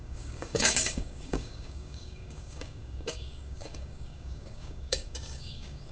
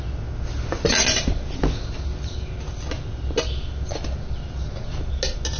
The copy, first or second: first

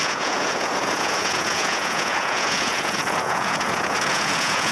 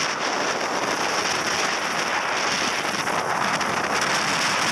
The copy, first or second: first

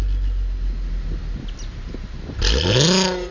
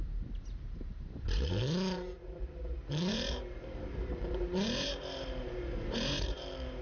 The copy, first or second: second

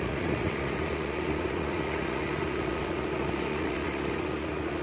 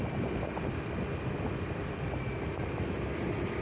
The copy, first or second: first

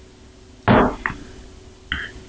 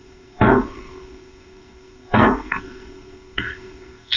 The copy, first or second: second